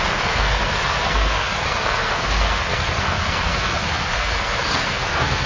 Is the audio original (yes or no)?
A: no